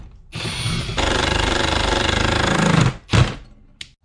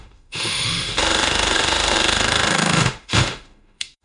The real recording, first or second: first